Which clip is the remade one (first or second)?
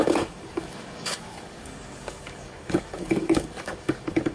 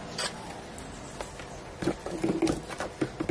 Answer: first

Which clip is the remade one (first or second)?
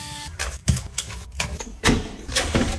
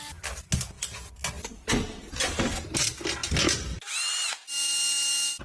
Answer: first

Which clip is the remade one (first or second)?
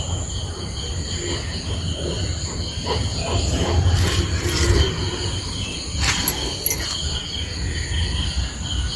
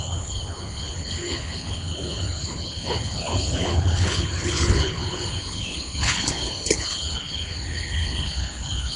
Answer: second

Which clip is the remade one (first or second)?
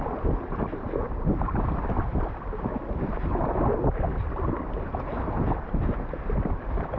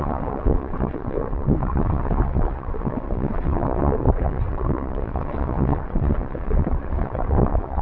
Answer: second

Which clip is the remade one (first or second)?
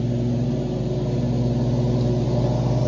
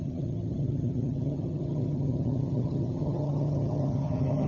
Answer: second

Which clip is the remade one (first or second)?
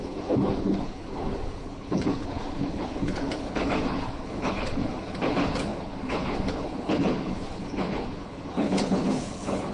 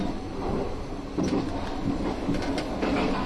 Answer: first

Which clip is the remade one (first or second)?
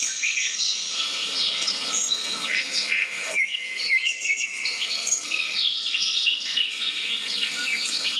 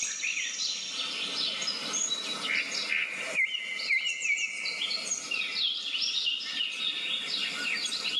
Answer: first